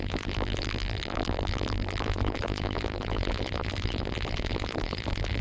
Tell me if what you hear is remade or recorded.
remade